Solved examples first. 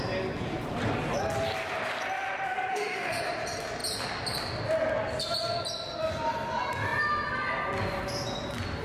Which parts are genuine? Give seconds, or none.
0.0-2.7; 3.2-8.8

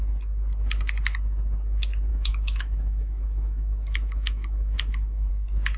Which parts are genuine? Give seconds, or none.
0.0-2.1; 5.3-5.8

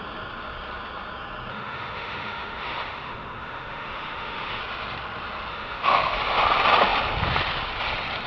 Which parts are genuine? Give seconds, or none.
0.0-1.5; 4.6-5.5; 6.2-8.3

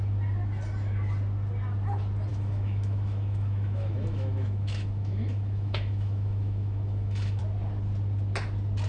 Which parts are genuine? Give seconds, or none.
0.0-2.3; 7.4-8.9